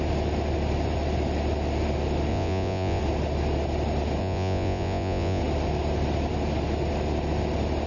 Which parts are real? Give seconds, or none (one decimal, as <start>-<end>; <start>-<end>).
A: 0.0-2.3; 3.0-4.2; 5.4-7.9